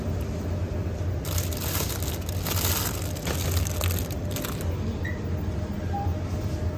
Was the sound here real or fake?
real